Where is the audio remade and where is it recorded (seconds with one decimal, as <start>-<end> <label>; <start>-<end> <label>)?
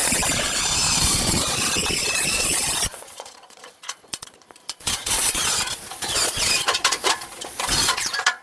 0.0-8.4 remade